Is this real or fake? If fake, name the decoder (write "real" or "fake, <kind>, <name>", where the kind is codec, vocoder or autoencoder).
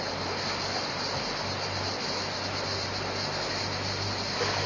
real